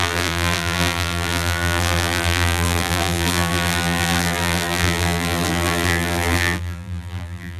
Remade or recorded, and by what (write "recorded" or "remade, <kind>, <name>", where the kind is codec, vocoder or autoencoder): remade, vocoder, BigVGAN v2